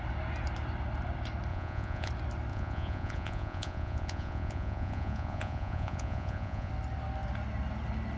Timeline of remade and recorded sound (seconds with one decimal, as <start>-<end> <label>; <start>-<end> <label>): 0.0-1.5 recorded; 1.5-2.1 remade; 2.1-2.5 recorded; 2.5-6.7 remade; 6.7-8.2 recorded